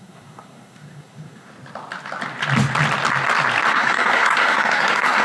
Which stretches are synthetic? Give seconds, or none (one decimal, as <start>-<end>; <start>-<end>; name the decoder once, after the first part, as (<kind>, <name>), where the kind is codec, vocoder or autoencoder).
0.0-1.5 (codec, SNAC); 3.7-5.2